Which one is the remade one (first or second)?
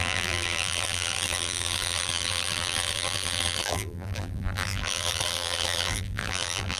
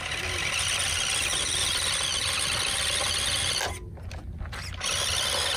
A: first